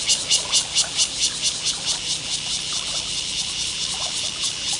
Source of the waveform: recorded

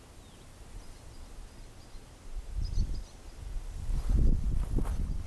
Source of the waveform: recorded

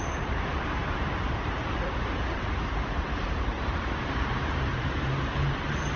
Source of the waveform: remade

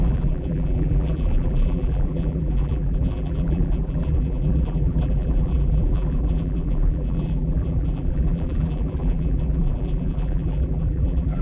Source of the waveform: remade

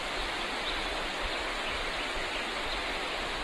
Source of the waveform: recorded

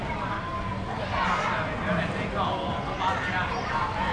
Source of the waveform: recorded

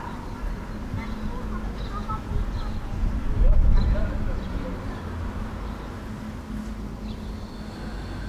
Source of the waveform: recorded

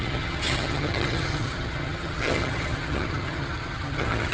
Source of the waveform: remade